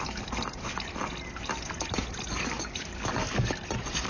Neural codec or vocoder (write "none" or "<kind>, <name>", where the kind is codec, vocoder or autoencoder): none